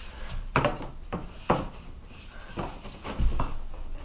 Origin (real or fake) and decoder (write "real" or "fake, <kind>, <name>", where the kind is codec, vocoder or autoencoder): real